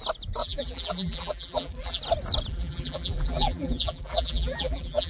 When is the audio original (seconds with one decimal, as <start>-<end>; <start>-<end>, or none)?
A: 0.0-0.4; 2.0-2.5